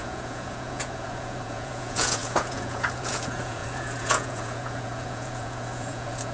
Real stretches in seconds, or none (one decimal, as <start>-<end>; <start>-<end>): none